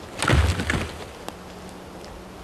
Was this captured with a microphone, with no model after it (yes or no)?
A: yes